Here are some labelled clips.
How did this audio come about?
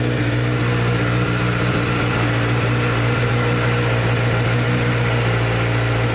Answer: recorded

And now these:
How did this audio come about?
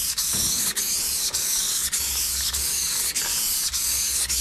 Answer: remade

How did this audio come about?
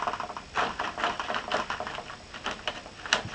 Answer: recorded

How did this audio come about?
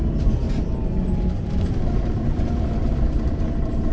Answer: recorded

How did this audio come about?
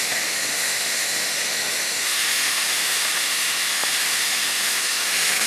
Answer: remade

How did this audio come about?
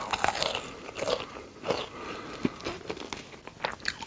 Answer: recorded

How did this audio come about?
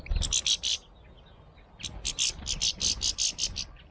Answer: recorded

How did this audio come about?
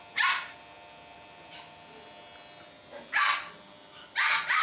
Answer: recorded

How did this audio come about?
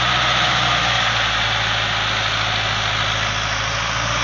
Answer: recorded